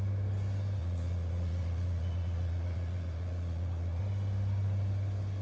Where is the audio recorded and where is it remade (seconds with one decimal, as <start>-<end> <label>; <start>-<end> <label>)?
0.0-0.8 recorded; 0.8-4.0 remade; 4.0-5.4 recorded